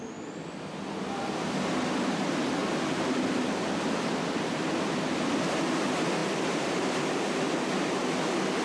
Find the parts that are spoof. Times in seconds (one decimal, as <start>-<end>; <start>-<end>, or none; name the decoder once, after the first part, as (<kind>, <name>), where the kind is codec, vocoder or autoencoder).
2.6-5.4 (vocoder, BigVGAN v2); 6.2-7.0